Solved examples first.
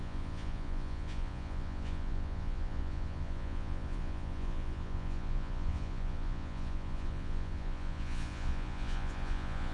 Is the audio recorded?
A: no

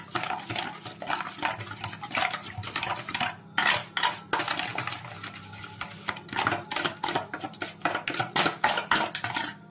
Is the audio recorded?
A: yes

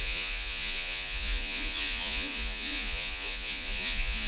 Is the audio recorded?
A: no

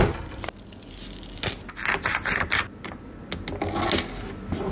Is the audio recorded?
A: yes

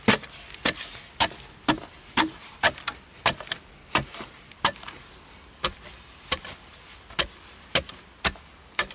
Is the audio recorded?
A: yes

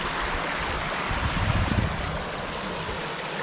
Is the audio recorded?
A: yes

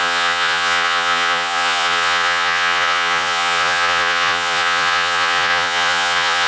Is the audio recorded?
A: no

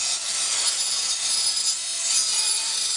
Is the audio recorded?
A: yes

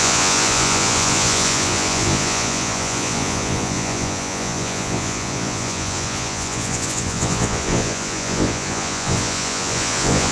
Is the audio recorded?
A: no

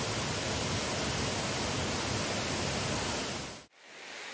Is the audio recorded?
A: yes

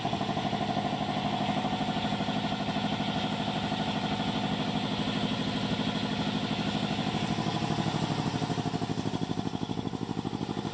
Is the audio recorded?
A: yes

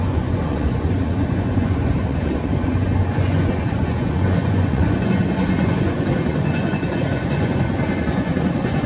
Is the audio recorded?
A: no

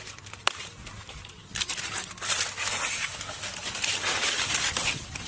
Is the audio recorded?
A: yes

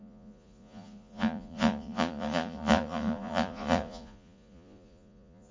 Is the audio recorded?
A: no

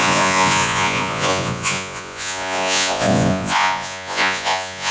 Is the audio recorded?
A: no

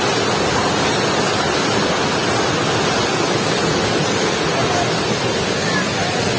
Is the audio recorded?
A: yes